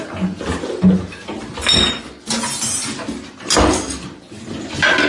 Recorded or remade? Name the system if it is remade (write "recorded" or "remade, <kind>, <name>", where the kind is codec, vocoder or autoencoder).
recorded